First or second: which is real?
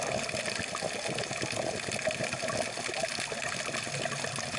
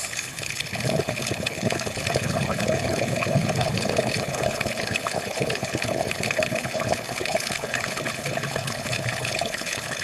first